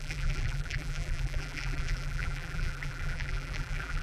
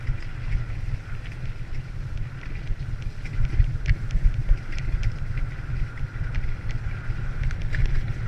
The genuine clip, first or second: second